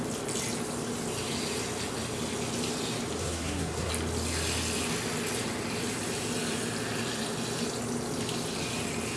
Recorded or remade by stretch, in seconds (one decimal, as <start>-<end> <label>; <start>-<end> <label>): 0.0-3.2 recorded; 3.2-3.9 remade; 3.9-9.2 recorded